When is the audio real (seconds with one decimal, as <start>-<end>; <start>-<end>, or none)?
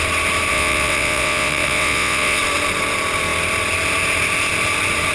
0.0-0.5; 2.4-5.1